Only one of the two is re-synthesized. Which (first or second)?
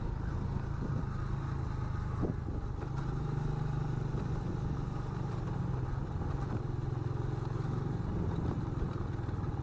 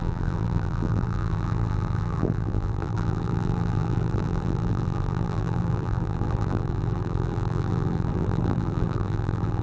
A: second